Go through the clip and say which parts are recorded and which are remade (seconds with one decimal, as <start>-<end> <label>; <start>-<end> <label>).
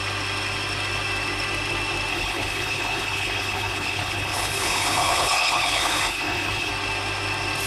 0.0-2.1 recorded; 2.1-6.7 remade; 6.7-7.7 recorded